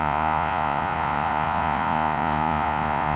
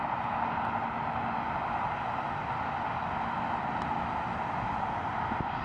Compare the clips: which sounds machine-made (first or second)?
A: first